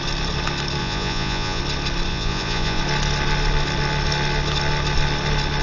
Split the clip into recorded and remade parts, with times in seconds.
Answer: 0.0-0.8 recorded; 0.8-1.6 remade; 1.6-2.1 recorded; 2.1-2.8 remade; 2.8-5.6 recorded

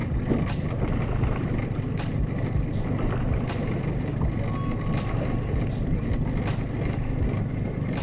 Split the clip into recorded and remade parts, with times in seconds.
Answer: 0.0-8.0 recorded

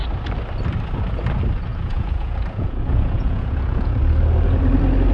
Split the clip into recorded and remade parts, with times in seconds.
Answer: 0.0-1.7 recorded; 1.7-4.0 remade; 4.0-5.1 recorded